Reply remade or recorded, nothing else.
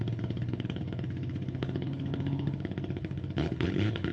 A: remade